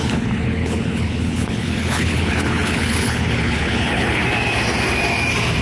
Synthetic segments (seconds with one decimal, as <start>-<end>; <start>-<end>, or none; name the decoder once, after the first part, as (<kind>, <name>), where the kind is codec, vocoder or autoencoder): 0.0-4.2 (codec, HILCodec)